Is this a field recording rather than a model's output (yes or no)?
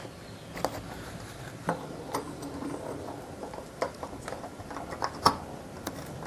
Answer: yes